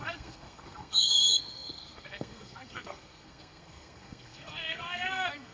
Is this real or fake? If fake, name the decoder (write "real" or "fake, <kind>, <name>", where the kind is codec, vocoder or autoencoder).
fake, codec, SNAC